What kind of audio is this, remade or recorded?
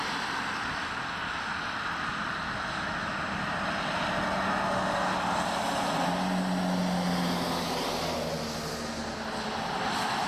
recorded